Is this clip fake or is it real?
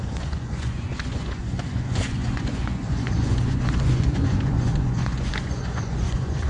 fake